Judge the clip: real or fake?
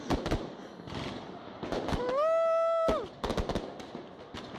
real